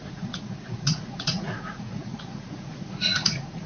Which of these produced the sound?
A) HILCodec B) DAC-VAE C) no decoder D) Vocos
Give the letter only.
D